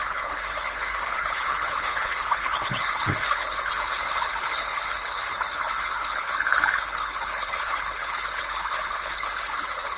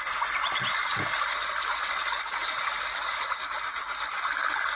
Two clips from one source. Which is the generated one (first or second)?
first